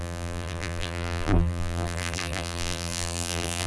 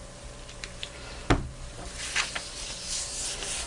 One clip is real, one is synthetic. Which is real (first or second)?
second